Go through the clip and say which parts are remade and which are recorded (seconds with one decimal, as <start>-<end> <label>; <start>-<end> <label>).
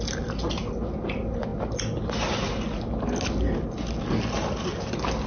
0.0-5.3 recorded